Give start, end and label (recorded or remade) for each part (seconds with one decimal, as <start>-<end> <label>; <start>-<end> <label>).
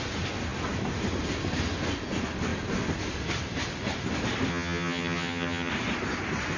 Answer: 0.0-4.5 recorded; 4.5-5.7 remade; 5.7-6.6 recorded